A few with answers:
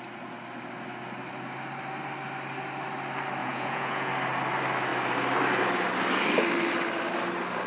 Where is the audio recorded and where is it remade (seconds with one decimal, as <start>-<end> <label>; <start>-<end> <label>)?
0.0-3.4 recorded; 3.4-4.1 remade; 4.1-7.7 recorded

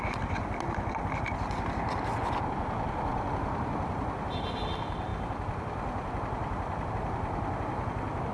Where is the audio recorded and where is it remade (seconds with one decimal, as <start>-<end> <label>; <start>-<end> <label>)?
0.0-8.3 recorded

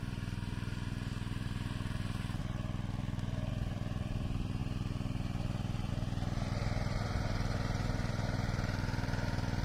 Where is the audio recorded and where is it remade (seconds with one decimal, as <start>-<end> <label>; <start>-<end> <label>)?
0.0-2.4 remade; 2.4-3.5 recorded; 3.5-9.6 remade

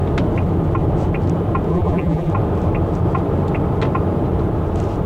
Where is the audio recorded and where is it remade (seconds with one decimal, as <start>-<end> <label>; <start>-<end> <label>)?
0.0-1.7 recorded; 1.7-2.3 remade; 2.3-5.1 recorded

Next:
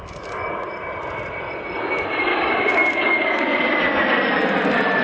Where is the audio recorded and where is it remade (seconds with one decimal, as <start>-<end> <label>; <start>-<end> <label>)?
0.0-2.3 recorded; 2.3-3.4 remade; 3.4-5.0 recorded

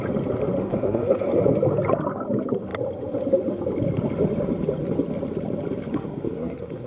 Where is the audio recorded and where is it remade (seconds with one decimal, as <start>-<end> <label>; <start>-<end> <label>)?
0.0-0.6 recorded; 0.6-1.3 remade; 1.3-5.9 recorded; 5.9-6.9 remade